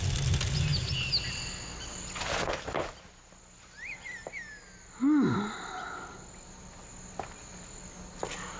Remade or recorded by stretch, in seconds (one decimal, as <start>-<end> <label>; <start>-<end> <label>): 0.0-8.6 recorded

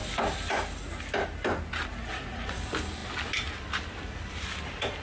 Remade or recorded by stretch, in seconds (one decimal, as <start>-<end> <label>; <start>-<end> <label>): 0.0-2.0 recorded; 2.0-2.6 remade; 2.6-5.0 recorded

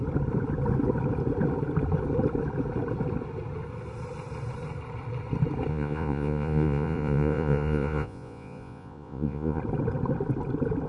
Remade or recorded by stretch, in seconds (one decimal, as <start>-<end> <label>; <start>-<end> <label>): 0.0-5.7 recorded; 5.7-9.6 remade; 9.6-10.9 recorded